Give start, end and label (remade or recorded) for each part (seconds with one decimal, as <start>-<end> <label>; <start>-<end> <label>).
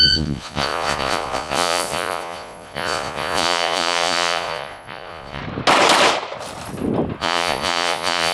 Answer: 0.0-5.4 remade; 5.4-7.2 recorded; 7.2-8.3 remade